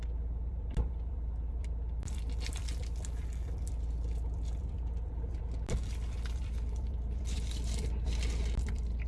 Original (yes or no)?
no